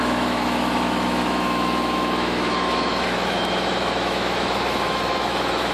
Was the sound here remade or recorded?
remade